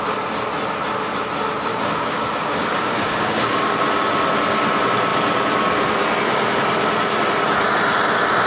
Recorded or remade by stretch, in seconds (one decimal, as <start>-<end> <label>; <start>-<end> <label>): 0.0-1.7 recorded; 1.7-3.9 remade; 3.9-8.5 recorded